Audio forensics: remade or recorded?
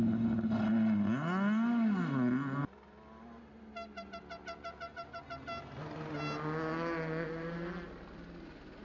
recorded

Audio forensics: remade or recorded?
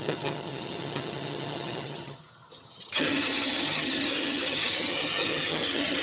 remade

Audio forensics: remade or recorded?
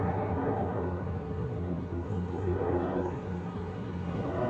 remade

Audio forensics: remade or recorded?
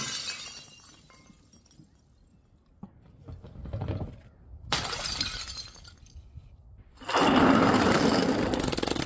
recorded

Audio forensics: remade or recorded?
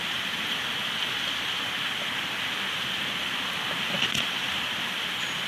recorded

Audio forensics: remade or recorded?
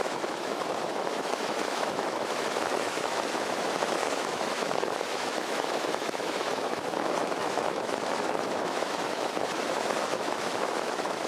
remade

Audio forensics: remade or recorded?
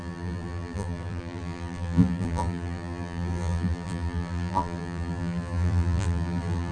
remade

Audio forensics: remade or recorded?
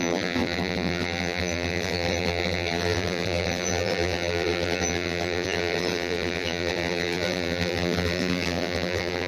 remade